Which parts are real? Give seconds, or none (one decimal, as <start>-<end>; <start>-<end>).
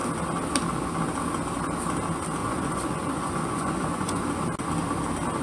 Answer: 0.0-2.4; 4.2-5.4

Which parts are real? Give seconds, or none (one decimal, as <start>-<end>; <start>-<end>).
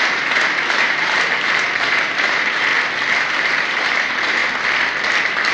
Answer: 2.7-3.3; 4.4-5.5